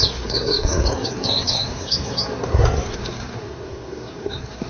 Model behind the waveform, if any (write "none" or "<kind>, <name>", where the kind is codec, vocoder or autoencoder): codec, SNAC